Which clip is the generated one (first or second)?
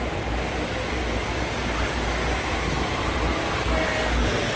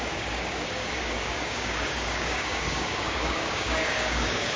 second